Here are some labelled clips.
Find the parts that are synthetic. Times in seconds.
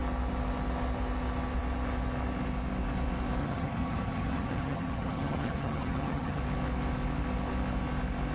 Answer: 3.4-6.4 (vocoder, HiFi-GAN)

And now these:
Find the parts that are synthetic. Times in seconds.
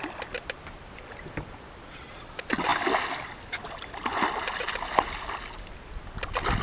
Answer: none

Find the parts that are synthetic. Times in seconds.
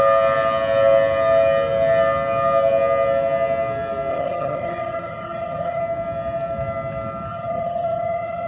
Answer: 4.1-5.8 (vocoder, HiFi-GAN); 7.3-8.5